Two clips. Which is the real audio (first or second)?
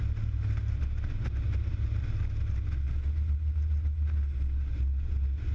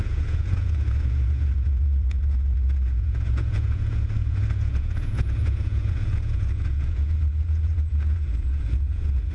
first